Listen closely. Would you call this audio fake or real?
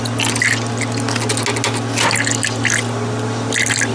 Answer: real